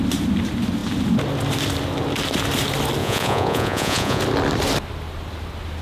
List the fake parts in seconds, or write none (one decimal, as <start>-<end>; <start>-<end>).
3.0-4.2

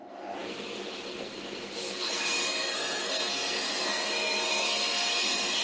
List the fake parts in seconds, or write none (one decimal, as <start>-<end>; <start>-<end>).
0.0-5.6

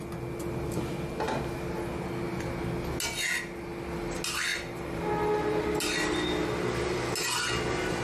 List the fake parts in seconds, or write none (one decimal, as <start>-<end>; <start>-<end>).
4.5-5.1